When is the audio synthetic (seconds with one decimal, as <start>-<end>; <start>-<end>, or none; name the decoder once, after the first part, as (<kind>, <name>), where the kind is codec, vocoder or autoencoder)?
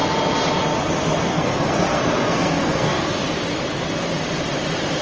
1.3-3.0 (codec, SNAC)